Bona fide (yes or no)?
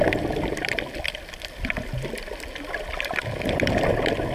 yes